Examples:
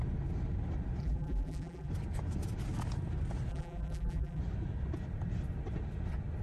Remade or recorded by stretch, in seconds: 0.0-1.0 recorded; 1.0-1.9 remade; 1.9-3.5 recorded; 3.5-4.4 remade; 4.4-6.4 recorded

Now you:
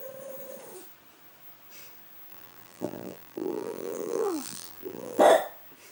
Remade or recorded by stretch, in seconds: 0.0-2.3 recorded; 2.3-5.2 remade; 5.2-5.9 recorded

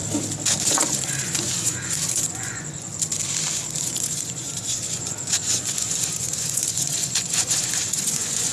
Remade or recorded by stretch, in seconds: 0.0-0.6 recorded; 0.6-2.9 remade; 2.9-3.8 recorded; 3.8-8.5 remade